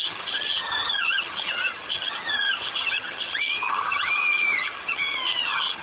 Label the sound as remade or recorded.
remade